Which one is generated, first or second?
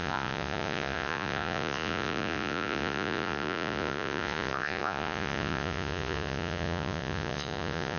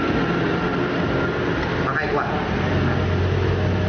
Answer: first